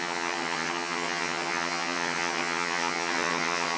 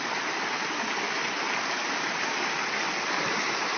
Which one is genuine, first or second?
second